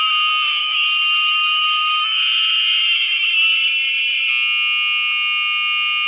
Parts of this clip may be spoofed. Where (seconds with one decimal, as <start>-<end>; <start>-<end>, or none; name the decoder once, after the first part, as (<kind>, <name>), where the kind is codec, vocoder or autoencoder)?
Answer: 0.6-4.3 (codec, DAC)